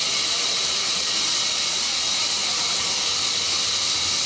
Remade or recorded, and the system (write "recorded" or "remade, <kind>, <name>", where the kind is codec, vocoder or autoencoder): recorded